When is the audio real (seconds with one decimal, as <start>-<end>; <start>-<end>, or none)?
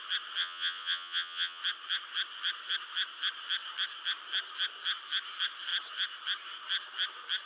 0.0-0.4; 1.6-7.5